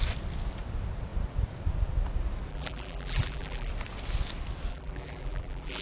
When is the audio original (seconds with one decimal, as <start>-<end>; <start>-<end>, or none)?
0.0-2.5; 3.7-4.7